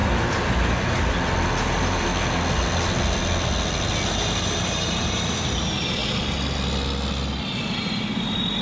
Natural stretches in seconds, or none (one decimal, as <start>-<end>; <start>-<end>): 0.0-1.6; 2.1-4.1; 6.0-7.6